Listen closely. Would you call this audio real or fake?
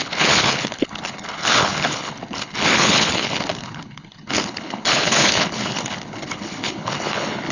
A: fake